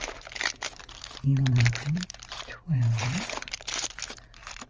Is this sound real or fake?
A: fake